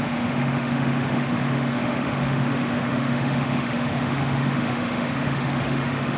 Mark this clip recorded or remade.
remade